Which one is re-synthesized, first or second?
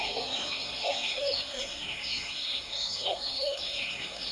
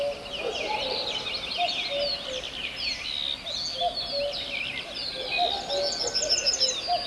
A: first